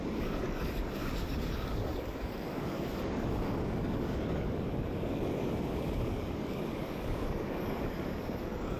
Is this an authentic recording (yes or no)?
no